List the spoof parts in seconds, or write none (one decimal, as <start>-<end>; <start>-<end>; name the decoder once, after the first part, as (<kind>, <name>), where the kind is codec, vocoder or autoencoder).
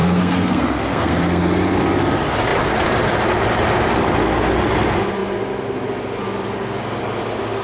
0.0-1.4 (codec, SNAC)